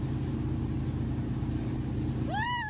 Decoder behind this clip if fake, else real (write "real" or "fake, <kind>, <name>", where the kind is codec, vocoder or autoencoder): fake, vocoder, BigVGAN v2